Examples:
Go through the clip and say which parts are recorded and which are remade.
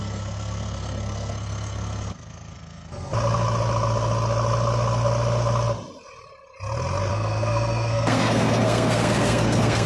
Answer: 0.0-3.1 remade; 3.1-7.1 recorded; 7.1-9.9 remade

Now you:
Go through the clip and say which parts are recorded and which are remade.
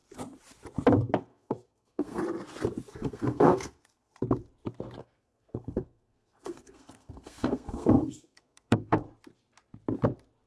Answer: 0.0-1.3 recorded; 1.3-2.2 remade; 2.2-2.9 recorded; 2.9-4.1 remade; 4.1-5.0 recorded; 5.0-9.0 remade; 9.0-10.5 recorded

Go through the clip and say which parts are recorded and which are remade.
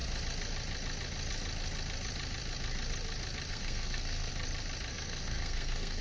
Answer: 0.0-3.5 recorded; 3.5-4.3 remade; 4.3-4.9 recorded; 4.9-6.0 remade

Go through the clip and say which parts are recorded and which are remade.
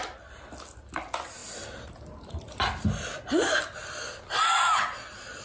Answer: 0.0-5.4 recorded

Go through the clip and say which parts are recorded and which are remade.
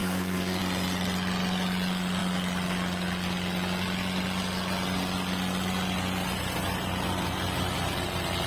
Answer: 0.0-0.6 remade; 0.6-8.5 recorded